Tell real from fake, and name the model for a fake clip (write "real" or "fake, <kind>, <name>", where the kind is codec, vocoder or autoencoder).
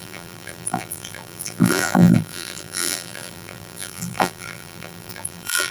fake, vocoder, BigVGAN v2